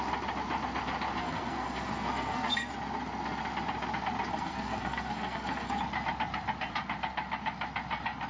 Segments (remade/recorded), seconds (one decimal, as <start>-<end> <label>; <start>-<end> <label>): 0.0-1.2 recorded; 1.2-2.7 remade; 2.7-4.3 recorded; 4.3-5.8 remade; 5.8-8.3 recorded